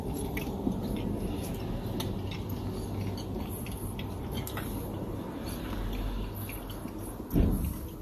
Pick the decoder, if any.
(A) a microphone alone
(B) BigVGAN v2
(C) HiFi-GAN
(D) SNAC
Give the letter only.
A